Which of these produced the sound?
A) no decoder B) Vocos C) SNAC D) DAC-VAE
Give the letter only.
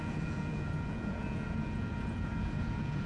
B